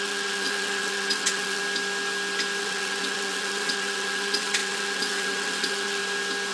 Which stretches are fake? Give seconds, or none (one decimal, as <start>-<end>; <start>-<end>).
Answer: 0.0-1.6; 2.6-6.0